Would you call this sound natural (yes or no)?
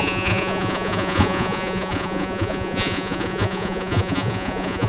no